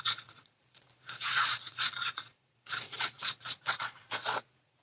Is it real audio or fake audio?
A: fake